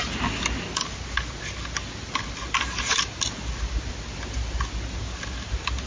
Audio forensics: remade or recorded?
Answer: recorded